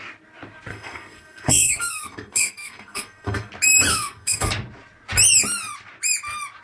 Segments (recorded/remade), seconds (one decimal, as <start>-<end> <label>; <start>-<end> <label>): 0.0-0.7 recorded; 0.7-3.5 remade; 3.5-3.9 recorded; 3.9-4.5 remade; 4.5-6.6 recorded